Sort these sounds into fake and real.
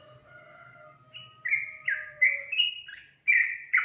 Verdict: real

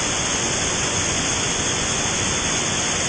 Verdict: fake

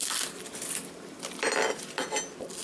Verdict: real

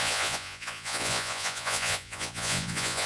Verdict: fake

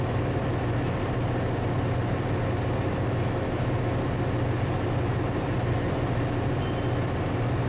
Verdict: real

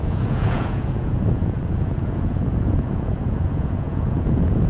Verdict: fake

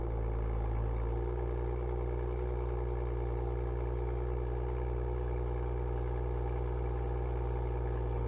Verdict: real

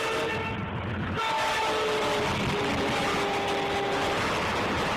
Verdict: real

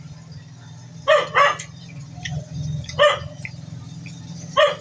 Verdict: real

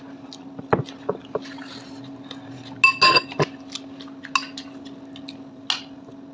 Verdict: real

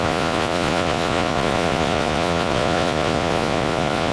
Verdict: fake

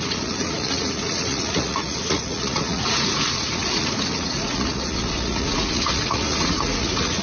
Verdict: fake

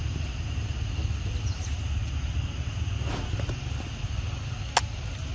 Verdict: real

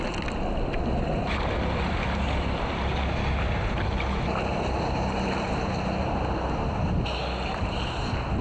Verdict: real